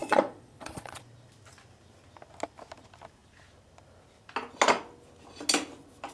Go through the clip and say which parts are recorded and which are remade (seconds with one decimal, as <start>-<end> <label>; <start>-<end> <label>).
0.0-1.0 remade; 1.0-6.1 recorded